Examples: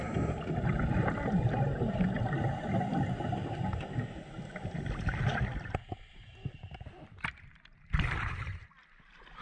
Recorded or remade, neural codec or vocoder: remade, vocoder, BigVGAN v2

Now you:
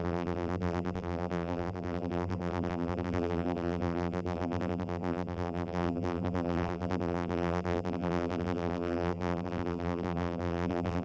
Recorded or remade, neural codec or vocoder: remade, vocoder, BigVGAN v2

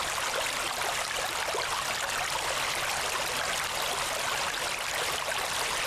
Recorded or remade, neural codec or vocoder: recorded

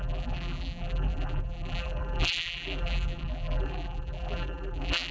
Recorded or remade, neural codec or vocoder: remade, vocoder, BigVGAN v2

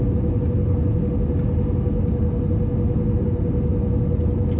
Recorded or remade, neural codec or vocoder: recorded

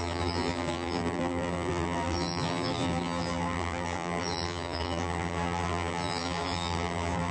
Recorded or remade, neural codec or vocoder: remade, vocoder, BigVGAN v2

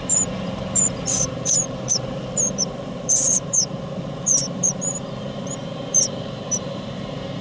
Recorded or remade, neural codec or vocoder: remade, vocoder, BigVGAN v2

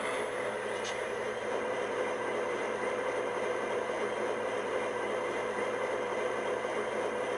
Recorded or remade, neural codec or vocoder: remade, vocoder, BigVGAN v2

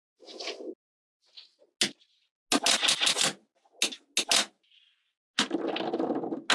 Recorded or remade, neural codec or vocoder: recorded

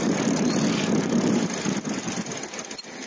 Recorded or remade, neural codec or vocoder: recorded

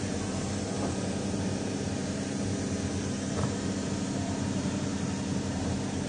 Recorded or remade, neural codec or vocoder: remade, vocoder, BigVGAN v2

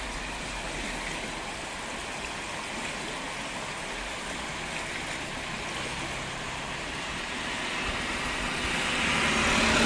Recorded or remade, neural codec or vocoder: recorded